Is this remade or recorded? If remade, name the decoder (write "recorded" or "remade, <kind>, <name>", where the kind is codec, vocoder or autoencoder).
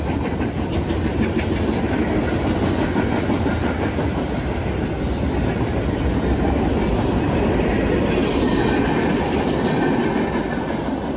recorded